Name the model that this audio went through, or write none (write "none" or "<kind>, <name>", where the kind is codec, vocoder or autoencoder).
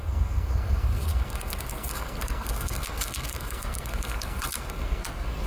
codec, SNAC